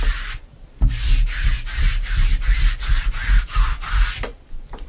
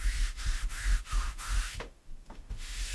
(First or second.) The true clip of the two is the first